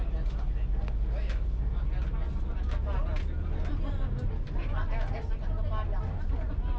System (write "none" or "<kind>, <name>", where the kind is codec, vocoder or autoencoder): none